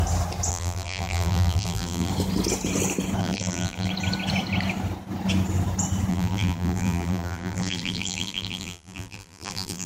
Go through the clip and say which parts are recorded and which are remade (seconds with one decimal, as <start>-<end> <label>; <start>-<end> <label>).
0.0-0.5 recorded; 0.5-2.1 remade; 2.1-3.2 recorded; 3.2-3.9 remade; 3.9-6.1 recorded; 6.1-9.9 remade